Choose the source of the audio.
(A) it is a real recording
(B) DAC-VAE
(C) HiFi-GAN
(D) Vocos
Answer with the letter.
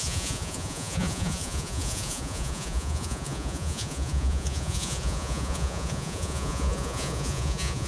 D